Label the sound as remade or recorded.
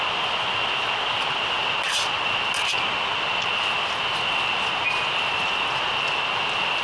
recorded